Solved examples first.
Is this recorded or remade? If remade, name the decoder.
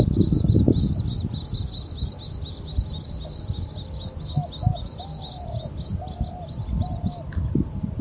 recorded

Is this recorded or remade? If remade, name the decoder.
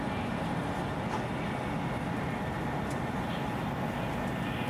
recorded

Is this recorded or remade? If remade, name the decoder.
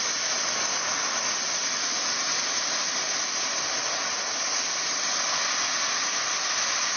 recorded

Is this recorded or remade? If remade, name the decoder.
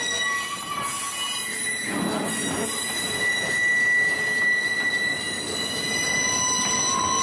recorded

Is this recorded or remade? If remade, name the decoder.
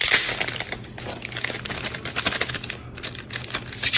recorded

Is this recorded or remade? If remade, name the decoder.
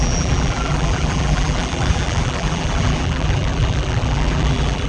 remade, vocoder, BigVGAN v2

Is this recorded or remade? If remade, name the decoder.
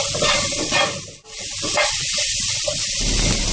recorded